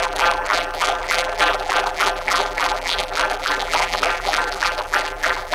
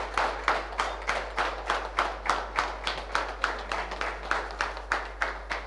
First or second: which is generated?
first